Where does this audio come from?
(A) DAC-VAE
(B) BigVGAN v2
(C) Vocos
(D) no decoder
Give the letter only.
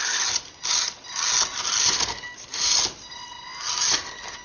D